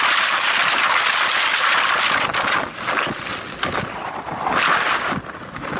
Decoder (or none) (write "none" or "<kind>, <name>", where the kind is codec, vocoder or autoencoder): none